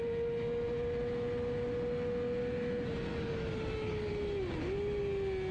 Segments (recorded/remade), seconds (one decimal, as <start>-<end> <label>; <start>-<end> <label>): 0.0-3.1 recorded; 3.1-4.1 remade; 4.1-5.5 recorded

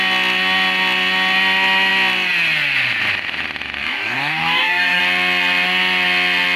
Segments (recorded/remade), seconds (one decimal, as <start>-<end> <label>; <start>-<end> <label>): 0.0-3.8 recorded; 3.8-5.0 remade; 5.0-6.6 recorded

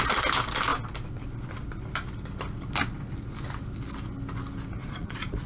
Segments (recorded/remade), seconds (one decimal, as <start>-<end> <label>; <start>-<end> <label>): 0.0-4.8 recorded; 4.8-5.5 remade

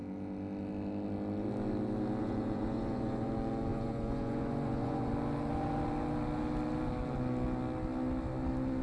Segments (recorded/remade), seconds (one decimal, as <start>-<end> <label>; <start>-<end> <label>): 0.0-2.2 recorded; 2.2-3.3 remade; 3.3-3.7 recorded; 3.7-5.1 remade; 5.1-8.8 recorded